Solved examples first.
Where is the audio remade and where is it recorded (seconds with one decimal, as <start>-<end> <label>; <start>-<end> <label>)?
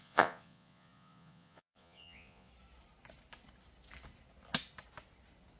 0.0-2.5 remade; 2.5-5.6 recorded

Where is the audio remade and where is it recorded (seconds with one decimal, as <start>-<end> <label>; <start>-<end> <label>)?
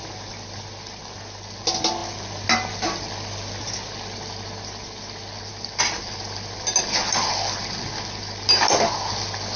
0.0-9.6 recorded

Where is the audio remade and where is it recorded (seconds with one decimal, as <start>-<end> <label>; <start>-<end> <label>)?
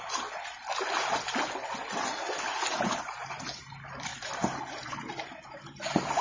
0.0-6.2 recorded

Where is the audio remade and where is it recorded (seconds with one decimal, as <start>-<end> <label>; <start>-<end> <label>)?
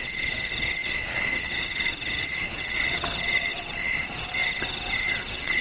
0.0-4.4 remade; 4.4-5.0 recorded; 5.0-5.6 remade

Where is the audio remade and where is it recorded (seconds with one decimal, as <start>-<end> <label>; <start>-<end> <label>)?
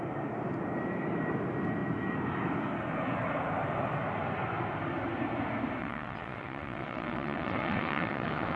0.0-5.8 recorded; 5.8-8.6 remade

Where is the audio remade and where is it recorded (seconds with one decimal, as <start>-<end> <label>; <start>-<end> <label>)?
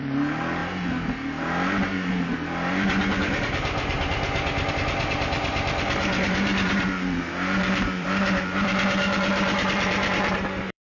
0.0-11.0 remade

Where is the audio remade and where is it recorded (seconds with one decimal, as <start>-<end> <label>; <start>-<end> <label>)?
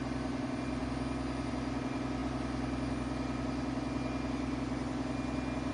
0.0-5.7 recorded